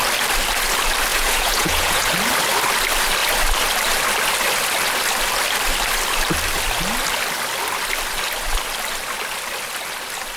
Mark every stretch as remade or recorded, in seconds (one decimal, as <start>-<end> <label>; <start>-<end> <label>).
0.0-1.1 recorded; 1.1-2.1 remade; 2.1-10.4 recorded